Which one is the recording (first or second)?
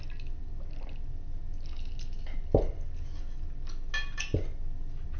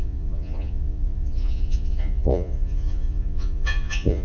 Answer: first